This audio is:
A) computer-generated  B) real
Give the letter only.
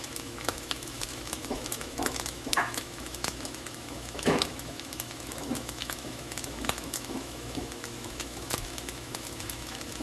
A